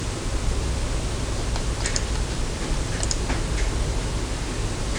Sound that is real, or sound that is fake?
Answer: fake